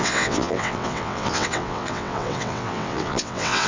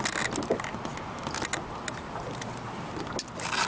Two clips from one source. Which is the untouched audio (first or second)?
second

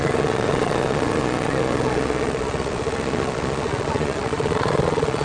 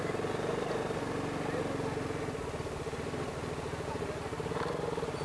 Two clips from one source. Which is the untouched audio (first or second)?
second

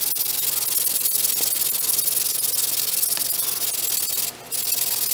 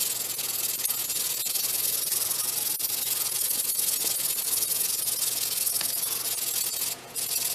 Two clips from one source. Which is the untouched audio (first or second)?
first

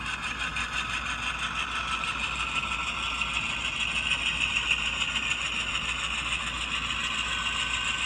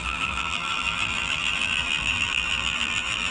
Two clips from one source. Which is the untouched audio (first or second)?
first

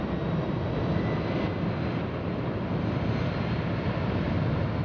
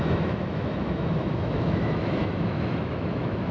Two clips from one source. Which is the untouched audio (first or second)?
first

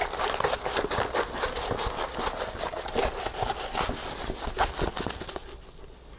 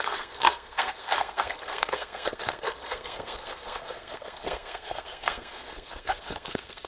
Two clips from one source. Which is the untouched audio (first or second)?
first